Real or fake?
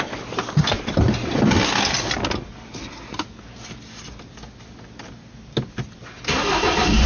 real